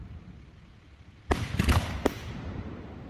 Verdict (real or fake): real